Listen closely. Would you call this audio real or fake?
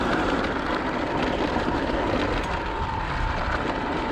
real